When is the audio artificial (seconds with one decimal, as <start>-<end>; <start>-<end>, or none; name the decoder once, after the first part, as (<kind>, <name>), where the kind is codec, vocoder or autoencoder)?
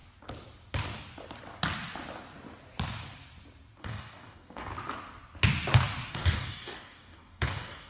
3.8-4.7 (codec, DAC); 6.1-7.9